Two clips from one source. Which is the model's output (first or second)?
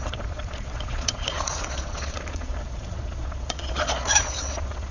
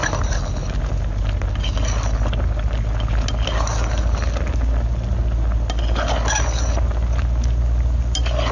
first